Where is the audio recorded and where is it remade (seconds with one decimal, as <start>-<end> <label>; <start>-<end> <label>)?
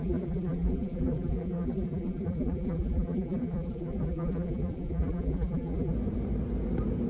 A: 0.0-5.9 remade; 5.9-7.1 recorded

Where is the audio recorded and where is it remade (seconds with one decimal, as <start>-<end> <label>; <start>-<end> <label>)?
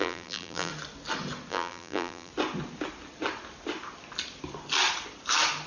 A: 0.0-0.7 remade; 0.7-1.5 recorded; 1.5-2.3 remade; 2.3-5.7 recorded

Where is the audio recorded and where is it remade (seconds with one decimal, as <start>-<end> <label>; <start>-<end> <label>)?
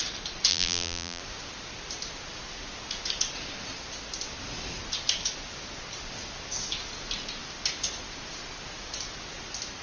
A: 0.0-0.5 recorded; 0.5-1.2 remade; 1.2-9.8 recorded